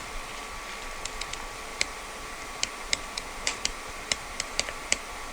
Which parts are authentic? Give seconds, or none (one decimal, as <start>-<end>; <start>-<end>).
0.0-1.7